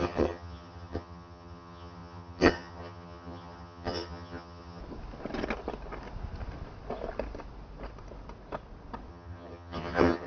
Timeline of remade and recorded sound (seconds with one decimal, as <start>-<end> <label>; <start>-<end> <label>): 0.0-4.8 remade; 4.8-9.1 recorded; 9.1-10.3 remade